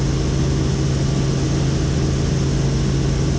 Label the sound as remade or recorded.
recorded